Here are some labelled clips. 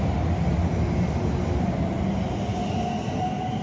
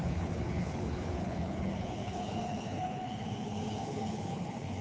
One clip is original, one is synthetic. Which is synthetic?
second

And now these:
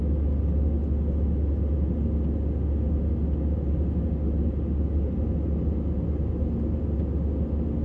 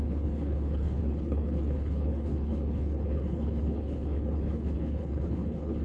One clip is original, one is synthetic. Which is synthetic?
second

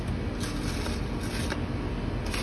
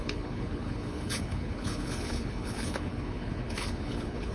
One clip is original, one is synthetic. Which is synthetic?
second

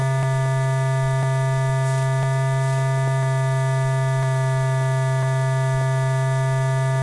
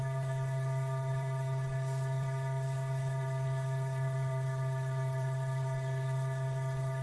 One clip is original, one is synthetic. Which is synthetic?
second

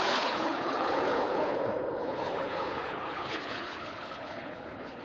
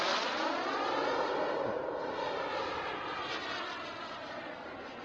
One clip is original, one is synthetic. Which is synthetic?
first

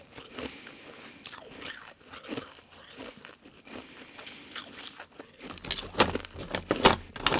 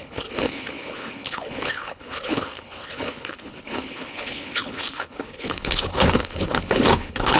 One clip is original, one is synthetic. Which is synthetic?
second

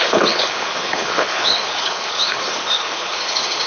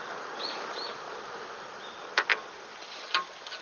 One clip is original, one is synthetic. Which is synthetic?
first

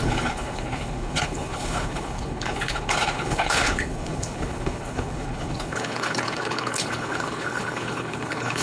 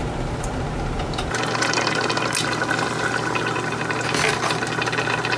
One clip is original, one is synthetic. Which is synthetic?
first